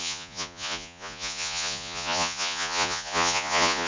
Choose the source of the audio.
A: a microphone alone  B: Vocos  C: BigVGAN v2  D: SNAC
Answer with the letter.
B